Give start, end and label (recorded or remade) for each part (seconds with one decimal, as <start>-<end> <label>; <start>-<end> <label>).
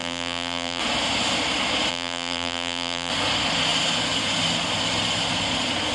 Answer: 0.0-0.8 remade; 0.8-1.9 recorded; 1.9-3.1 remade; 3.1-5.9 recorded